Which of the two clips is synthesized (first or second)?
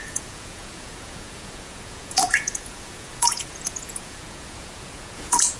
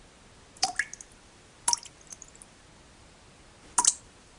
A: first